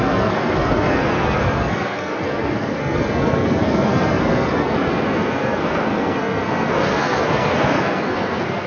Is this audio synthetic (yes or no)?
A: yes